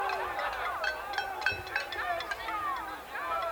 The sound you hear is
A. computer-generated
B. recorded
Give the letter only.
B